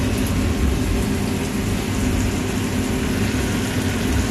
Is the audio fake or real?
real